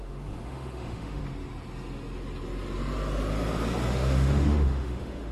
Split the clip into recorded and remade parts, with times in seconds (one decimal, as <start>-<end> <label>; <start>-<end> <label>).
0.0-1.2 remade; 1.2-3.9 recorded; 3.9-5.3 remade